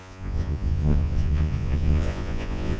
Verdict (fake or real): fake